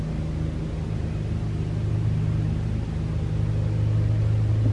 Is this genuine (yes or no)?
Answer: yes